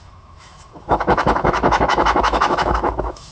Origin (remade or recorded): remade